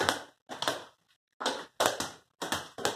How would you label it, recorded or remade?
recorded